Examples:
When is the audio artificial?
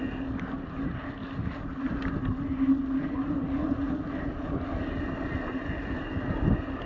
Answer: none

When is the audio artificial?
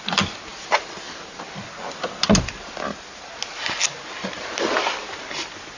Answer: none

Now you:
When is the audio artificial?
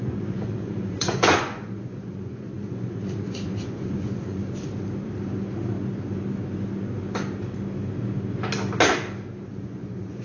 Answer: 0.0-4.4 (vocoder, Vocos); 9.5-10.2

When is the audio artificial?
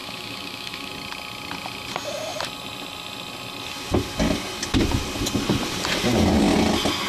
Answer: 0.0-0.9 (autoencoder, DAC-VAE)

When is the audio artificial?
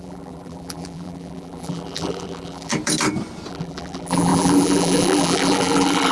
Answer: 0.0-2.7 (vocoder, BigVGAN v2); 3.5-6.1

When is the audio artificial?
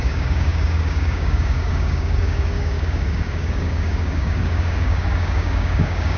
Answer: 0.0-6.2 (codec, DAC)